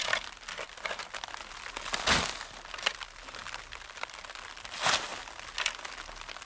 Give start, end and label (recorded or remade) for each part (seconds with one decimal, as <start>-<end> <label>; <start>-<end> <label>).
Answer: 0.0-6.5 recorded